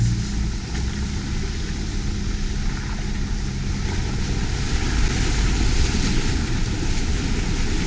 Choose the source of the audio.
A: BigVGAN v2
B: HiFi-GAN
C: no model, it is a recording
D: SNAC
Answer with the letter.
C